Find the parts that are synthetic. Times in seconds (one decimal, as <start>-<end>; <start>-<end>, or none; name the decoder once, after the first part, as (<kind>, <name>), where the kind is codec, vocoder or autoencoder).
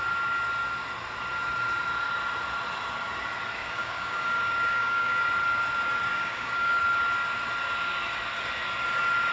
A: 3.6-5.2 (codec, DAC); 6.1-6.8